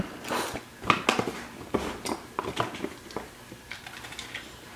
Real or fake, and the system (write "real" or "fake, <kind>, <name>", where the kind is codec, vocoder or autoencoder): real